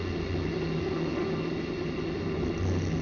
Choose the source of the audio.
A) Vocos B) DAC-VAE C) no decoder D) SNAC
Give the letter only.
C